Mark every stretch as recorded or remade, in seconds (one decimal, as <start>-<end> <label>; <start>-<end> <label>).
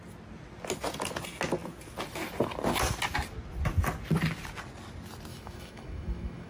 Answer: 0.0-5.3 recorded; 5.3-6.5 remade